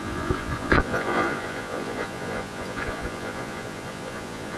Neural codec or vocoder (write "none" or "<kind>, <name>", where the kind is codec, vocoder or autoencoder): vocoder, Vocos